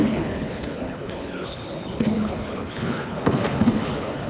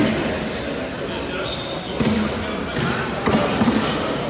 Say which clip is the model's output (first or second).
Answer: first